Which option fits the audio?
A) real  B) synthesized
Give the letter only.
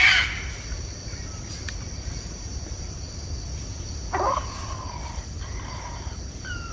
A